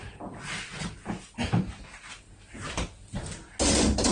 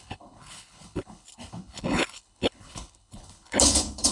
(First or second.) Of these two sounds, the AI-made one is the second